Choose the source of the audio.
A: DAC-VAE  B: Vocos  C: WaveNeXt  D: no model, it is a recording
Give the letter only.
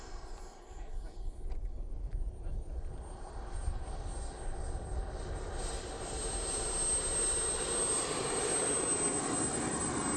D